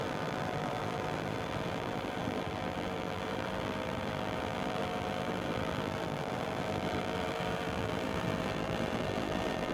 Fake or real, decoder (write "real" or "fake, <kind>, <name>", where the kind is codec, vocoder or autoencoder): fake, vocoder, BigVGAN v2